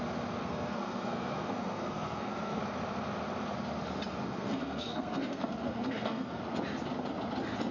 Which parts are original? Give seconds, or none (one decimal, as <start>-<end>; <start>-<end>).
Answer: 0.0-0.4; 2.6-4.2; 6.4-7.7